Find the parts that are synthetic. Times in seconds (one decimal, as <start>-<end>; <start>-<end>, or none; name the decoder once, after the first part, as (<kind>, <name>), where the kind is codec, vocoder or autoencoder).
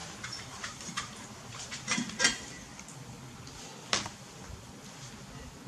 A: 0.0-2.2 (vocoder, BigVGAN v2)